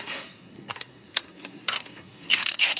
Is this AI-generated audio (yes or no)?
yes